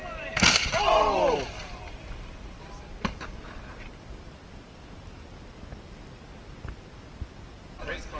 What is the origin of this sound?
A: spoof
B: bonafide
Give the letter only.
B